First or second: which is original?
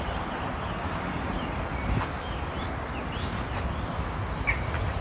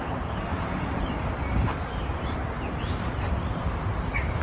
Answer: first